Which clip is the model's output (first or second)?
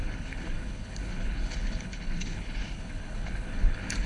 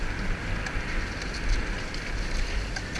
first